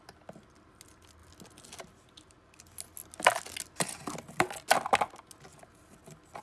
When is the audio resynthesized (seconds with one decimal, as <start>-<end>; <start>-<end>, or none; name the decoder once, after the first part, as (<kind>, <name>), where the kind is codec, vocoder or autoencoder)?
none